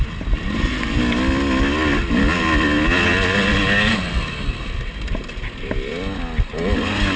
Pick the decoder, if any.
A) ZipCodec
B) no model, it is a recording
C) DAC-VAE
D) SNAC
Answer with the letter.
B